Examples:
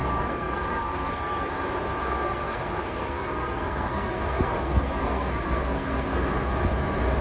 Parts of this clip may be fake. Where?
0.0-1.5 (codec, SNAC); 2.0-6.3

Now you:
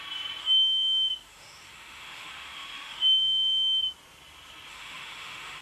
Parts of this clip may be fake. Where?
0.4-3.8 (autoencoder, DAC-VAE); 4.7-5.6

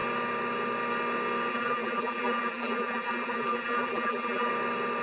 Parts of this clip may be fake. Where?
1.5-4.5 (vocoder, BigVGAN v2)